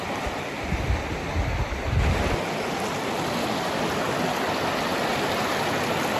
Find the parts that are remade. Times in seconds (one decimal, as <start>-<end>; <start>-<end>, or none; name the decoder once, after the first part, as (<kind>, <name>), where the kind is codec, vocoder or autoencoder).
none